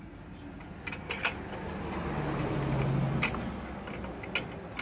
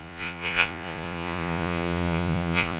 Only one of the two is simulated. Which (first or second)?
second